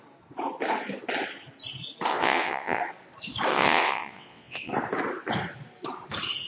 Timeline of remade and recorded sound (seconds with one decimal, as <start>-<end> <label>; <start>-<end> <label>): 0.0-2.1 recorded; 2.1-2.8 remade; 2.8-3.5 recorded; 3.5-4.7 remade; 4.7-6.5 recorded